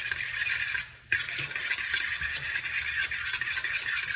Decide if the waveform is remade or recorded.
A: recorded